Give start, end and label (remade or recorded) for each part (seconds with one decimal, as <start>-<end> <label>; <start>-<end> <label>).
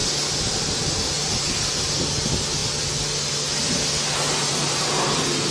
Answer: 0.0-1.5 remade; 1.5-5.5 recorded